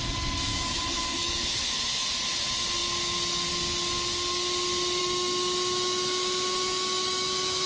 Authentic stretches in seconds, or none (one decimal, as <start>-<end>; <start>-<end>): 0.0-0.5; 2.1-5.0